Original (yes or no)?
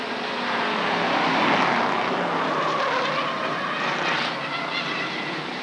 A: yes